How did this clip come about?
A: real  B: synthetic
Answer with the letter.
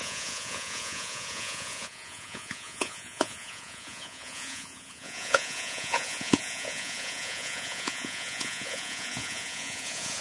B